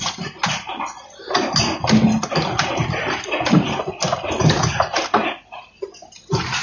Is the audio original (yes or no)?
yes